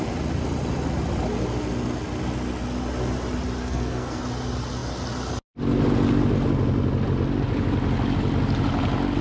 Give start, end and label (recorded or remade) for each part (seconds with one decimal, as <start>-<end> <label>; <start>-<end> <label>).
0.0-3.6 recorded; 3.6-4.2 remade; 4.2-9.2 recorded